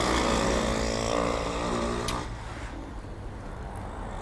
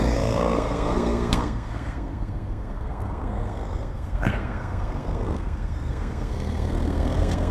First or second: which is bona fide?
first